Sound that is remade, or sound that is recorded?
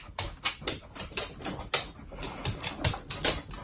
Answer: recorded